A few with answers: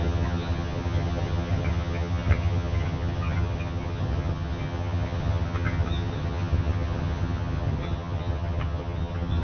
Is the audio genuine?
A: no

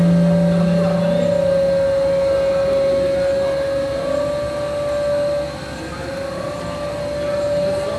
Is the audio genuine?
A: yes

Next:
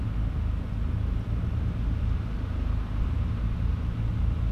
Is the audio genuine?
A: yes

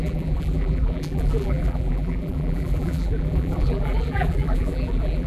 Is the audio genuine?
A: no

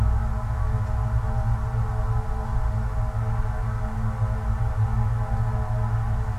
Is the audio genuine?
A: yes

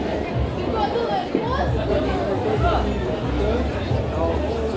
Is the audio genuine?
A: yes